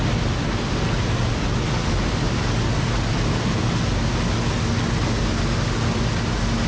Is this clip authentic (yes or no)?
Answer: yes